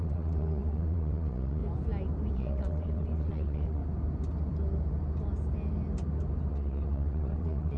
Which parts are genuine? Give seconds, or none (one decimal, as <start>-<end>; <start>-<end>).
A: 1.6-2.3; 3.8-6.5